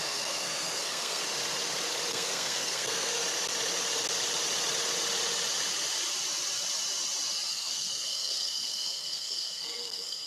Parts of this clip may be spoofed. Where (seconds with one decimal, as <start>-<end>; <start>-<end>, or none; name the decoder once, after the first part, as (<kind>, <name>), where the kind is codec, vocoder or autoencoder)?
0.0-1.2 (codec, SNAC); 2.1-3.2; 7.5-10.3